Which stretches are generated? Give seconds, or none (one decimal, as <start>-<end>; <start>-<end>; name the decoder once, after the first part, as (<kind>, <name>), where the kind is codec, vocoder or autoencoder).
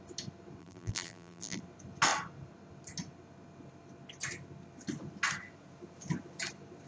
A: 0.6-1.6 (vocoder, BigVGAN v2)